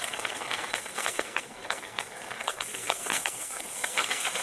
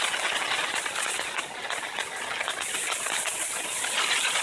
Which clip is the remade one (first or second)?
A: first